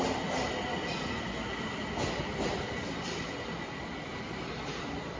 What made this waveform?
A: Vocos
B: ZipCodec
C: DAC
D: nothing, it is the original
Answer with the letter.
D